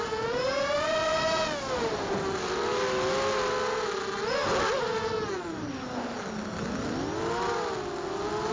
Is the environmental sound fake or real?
real